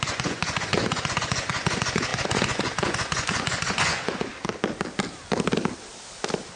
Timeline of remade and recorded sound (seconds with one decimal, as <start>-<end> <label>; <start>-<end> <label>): 0.0-4.3 remade; 4.3-6.6 recorded